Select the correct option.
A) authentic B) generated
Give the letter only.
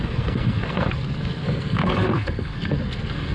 B